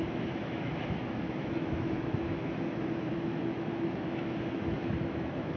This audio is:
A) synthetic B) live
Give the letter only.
A